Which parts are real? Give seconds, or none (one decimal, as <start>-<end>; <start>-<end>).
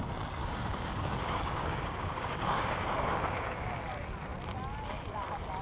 0.0-0.4; 3.8-5.6